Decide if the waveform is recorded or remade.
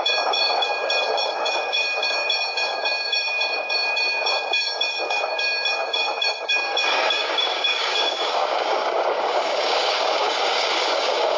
remade